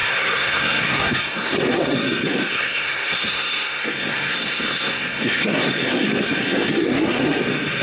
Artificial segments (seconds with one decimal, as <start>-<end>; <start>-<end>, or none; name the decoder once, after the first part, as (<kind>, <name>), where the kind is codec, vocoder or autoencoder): 0.0-7.8 (codec, SNAC)